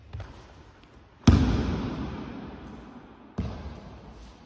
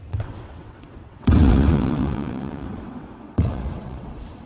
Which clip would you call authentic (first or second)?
first